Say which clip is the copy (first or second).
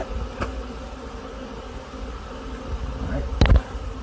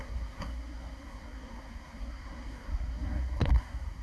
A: second